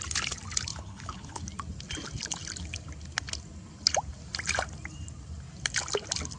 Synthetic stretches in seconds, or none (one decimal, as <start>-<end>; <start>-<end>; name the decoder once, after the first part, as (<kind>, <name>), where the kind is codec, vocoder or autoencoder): 0.7-1.4 (codec, HILCodec)